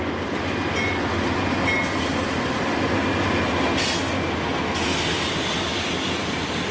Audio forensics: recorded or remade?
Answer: recorded